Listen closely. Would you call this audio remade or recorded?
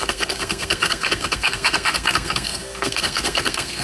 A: remade